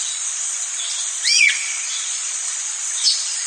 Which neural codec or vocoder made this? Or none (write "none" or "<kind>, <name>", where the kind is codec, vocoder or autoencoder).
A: vocoder, Vocos